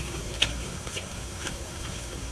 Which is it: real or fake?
fake